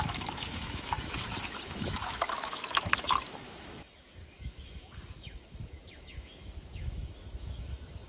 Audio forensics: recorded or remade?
remade